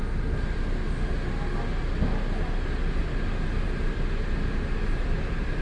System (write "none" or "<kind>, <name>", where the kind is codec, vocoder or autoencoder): none